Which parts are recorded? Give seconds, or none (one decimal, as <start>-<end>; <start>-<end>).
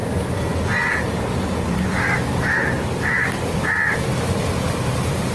0.0-3.2